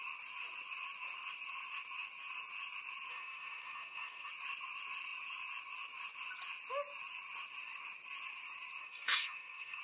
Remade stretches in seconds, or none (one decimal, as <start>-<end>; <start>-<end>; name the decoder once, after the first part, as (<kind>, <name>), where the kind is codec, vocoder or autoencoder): 3.1-4.3 (codec, DAC); 8.8-9.8